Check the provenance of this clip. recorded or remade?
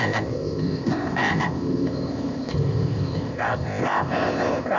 remade